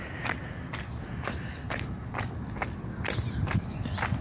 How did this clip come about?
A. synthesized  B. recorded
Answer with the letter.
B